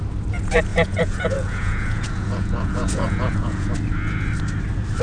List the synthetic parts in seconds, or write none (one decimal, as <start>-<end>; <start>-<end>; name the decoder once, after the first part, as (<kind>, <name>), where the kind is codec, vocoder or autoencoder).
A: 0.7-3.7 (vocoder, Vocos)